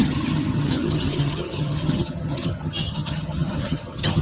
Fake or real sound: fake